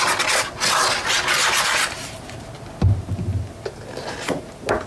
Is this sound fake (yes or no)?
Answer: no